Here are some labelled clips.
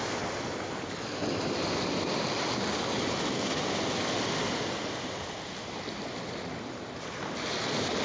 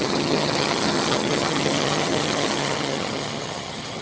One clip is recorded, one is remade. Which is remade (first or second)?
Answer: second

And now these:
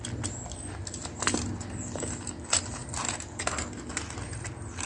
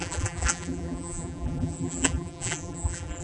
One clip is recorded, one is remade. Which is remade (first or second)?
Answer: second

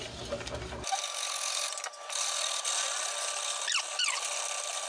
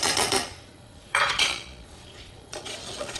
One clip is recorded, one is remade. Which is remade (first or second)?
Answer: second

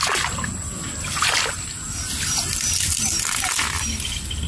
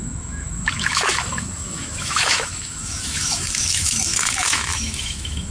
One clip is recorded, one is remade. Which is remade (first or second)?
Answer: second